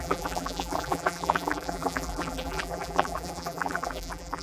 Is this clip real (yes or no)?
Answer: no